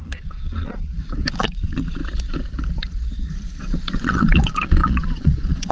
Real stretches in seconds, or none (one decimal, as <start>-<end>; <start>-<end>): 0.9-1.4; 2.0-3.6